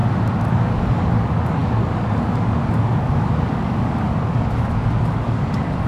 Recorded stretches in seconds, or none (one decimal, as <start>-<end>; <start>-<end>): 0.0-0.5